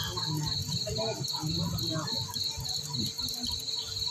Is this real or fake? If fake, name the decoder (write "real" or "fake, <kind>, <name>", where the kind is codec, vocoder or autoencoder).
real